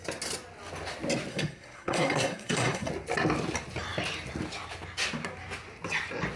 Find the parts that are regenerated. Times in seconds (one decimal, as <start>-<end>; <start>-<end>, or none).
1.3-2.9